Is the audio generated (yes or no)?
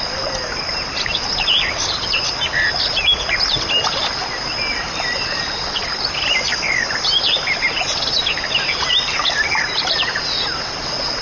no